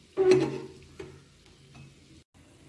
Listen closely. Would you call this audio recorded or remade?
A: recorded